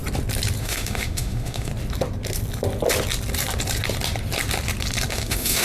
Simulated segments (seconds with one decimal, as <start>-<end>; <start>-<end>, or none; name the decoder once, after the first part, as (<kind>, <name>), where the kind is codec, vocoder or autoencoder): 0.6-1.7 (autoencoder, DAC-VAE); 5.1-5.6